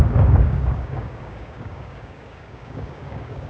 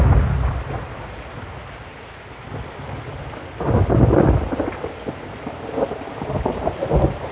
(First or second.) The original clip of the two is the second